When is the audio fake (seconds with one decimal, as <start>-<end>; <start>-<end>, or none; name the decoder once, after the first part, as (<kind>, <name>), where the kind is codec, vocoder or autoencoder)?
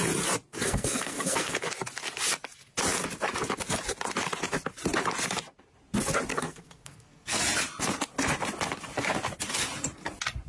0.5-1.6 (codec, SNAC); 6.3-7.4